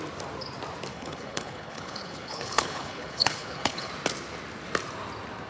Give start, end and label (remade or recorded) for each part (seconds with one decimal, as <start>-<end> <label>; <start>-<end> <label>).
0.0-0.9 recorded; 0.9-3.9 remade; 3.9-5.5 recorded